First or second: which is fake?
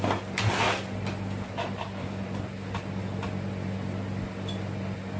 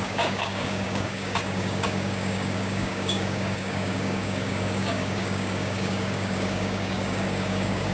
second